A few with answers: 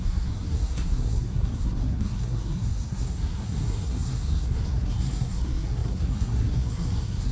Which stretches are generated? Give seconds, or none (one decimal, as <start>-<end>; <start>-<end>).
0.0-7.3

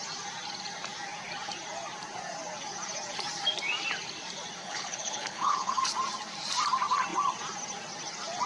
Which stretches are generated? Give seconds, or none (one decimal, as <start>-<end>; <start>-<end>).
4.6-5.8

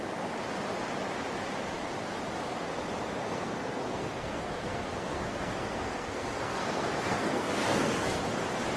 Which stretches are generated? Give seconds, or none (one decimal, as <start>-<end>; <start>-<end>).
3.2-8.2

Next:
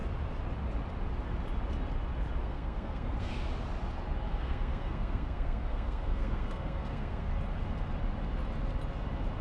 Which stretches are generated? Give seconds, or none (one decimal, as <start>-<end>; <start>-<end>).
2.4-3.3; 4.3-7.3

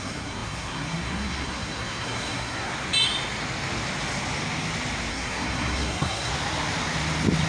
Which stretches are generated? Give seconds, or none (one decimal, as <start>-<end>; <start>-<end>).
0.0-2.7; 5.1-6.3